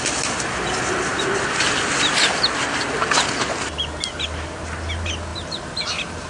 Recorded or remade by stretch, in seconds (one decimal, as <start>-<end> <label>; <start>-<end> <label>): 0.0-5.3 recorded; 5.3-6.3 remade